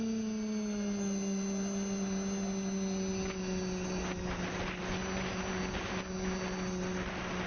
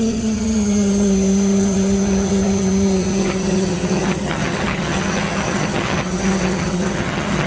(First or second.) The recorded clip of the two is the first